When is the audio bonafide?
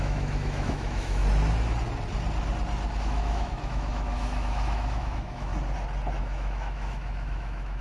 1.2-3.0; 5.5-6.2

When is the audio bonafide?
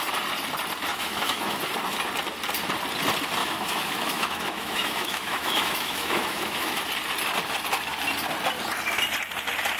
0.0-0.9; 1.6-3.4; 6.9-9.8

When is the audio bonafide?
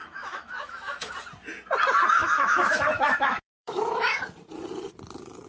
1.1-2.2; 4.2-5.5